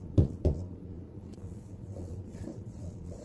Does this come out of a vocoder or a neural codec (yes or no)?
yes